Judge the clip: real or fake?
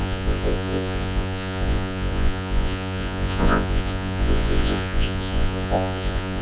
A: fake